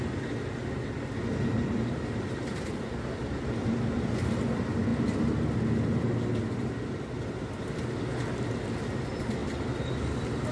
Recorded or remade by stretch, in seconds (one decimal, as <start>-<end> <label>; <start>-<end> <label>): 0.0-10.5 recorded